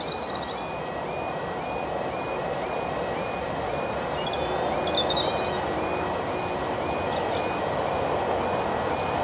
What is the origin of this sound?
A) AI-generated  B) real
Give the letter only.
B